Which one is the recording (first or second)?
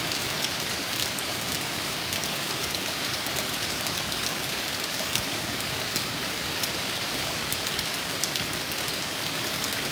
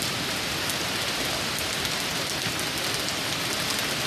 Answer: second